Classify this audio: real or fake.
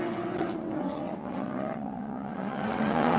fake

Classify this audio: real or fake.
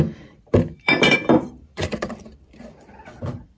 fake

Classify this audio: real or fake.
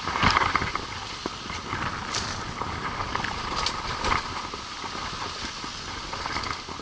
real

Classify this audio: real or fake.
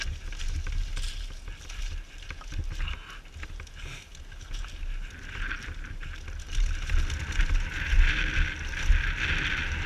real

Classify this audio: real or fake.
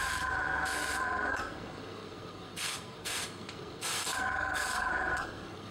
fake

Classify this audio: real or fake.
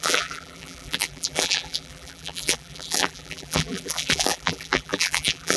fake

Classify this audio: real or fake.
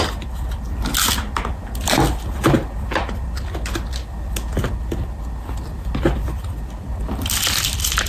real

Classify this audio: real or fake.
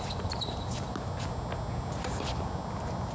real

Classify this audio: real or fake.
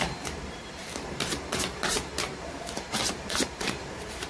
fake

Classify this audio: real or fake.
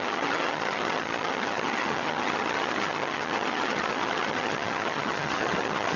fake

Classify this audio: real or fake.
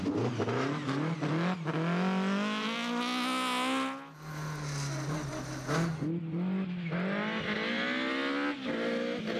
real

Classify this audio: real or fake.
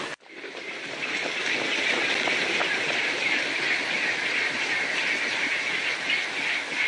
real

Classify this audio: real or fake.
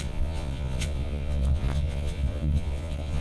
fake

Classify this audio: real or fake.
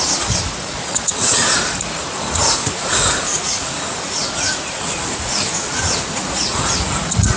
fake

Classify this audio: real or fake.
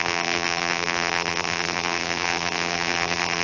fake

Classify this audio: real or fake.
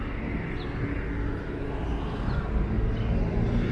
real